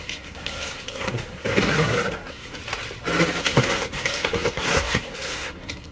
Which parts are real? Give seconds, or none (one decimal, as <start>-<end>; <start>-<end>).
2.6-3.4